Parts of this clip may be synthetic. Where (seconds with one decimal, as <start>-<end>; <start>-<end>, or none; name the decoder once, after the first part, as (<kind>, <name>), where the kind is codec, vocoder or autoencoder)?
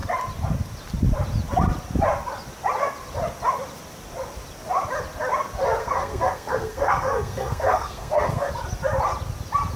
5.8-8.5 (codec, SNAC)